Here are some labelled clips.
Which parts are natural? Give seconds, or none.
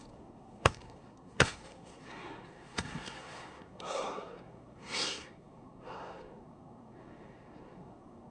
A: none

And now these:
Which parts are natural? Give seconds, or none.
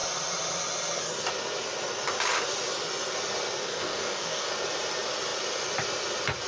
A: 0.0-3.6; 4.5-6.5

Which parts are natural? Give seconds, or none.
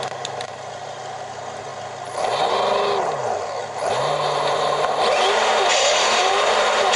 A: 1.7-3.9